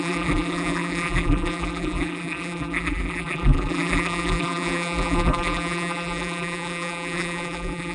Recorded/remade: remade